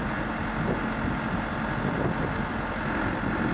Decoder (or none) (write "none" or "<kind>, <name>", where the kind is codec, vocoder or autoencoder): none